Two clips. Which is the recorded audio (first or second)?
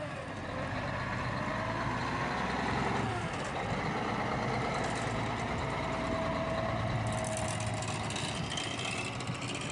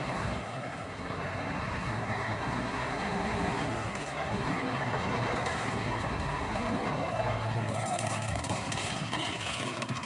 first